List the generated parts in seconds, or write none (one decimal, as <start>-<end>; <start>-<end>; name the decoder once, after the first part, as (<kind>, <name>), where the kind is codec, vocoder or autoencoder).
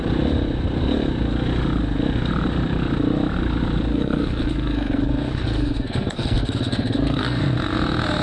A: 3.9-7.4 (codec, SNAC)